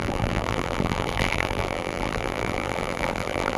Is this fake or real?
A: fake